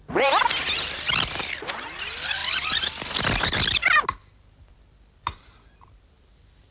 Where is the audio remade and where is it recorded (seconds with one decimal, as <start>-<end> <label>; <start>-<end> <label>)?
0.0-6.7 recorded